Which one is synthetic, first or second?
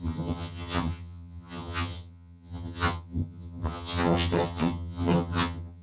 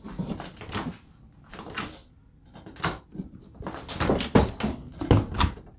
first